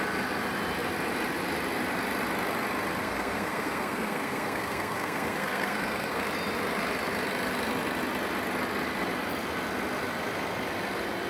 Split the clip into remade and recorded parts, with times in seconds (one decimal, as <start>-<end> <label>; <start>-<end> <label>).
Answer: 0.0-3.0 recorded; 3.0-6.2 remade; 6.2-11.3 recorded

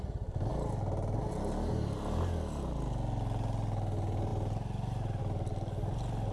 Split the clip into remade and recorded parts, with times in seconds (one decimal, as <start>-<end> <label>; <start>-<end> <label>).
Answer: 0.0-6.3 recorded

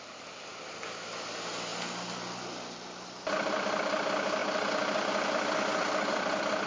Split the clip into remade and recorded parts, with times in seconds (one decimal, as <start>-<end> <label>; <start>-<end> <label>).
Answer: 0.0-6.7 recorded

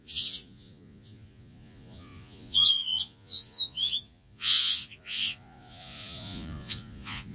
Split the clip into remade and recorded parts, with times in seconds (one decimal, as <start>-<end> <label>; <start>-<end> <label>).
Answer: 0.0-7.3 remade

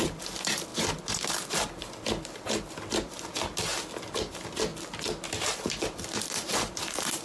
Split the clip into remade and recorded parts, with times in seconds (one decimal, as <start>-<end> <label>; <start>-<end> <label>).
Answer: 0.0-0.7 remade; 0.7-1.5 recorded; 1.5-3.7 remade; 3.7-4.3 recorded; 4.3-4.7 remade; 4.7-5.5 recorded; 5.5-7.2 remade